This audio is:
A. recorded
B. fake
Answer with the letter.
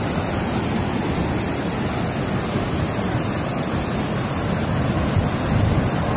A